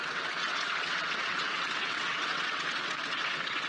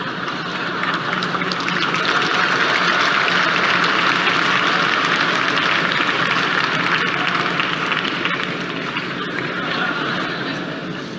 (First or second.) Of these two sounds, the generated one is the first